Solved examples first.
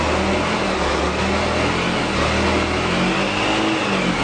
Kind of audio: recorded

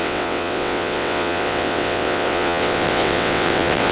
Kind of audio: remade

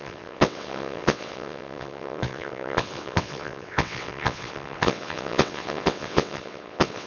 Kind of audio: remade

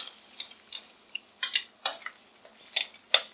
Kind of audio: recorded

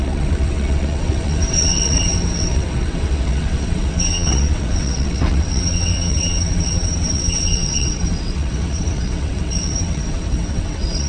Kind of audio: remade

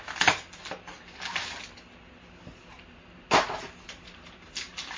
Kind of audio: recorded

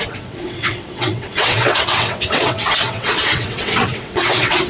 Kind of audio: remade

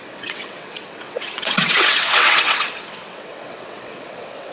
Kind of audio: remade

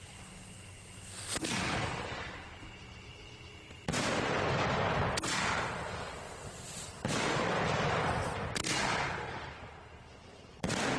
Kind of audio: recorded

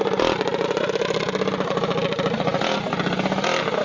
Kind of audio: recorded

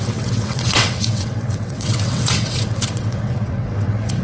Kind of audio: remade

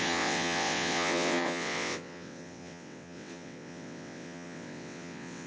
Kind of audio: remade